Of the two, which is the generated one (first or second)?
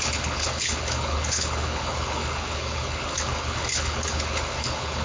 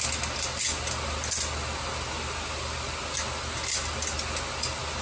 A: first